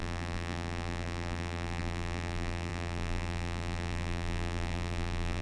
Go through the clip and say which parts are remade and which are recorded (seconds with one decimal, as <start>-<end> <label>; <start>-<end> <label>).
0.0-5.4 remade